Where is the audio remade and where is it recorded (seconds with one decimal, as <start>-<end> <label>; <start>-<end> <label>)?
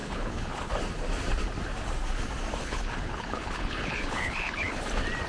0.0-0.7 remade; 0.7-2.6 recorded; 2.6-4.8 remade; 4.8-5.3 recorded